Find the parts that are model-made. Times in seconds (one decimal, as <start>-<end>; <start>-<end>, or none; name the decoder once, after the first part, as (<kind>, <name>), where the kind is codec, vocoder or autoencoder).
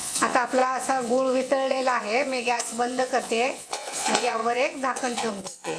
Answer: 0.0-5.8 (vocoder, Vocos)